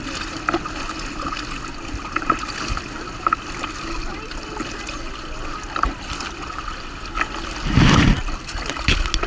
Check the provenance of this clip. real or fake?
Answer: real